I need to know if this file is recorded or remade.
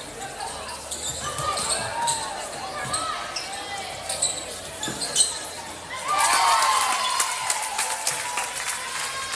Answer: recorded